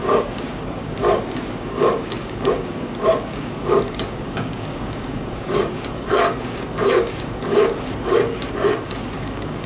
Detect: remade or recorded remade